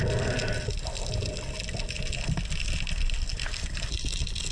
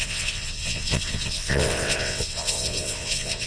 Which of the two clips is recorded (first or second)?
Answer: first